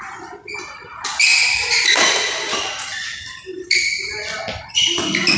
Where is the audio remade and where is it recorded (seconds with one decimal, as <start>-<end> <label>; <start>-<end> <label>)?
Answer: 0.0-5.4 recorded